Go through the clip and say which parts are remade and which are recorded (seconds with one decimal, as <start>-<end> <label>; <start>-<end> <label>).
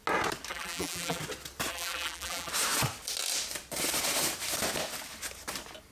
0.0-0.5 recorded; 0.5-1.2 remade; 1.2-1.7 recorded; 1.7-2.5 remade; 2.5-5.9 recorded